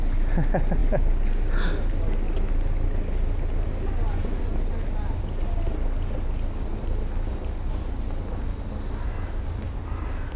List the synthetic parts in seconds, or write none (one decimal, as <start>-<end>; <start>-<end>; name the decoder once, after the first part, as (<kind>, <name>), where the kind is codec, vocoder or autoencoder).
none